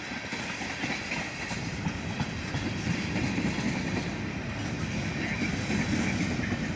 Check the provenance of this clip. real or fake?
real